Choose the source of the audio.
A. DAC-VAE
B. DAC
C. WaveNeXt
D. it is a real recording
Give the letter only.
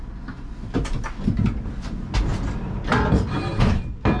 D